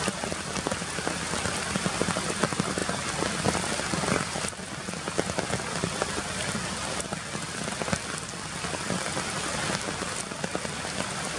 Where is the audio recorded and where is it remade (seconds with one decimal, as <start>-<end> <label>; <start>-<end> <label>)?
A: 0.0-11.4 recorded